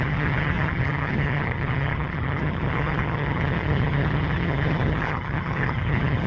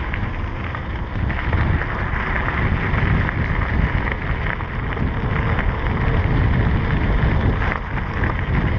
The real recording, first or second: second